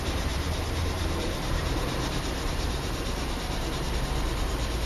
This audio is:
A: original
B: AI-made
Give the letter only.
B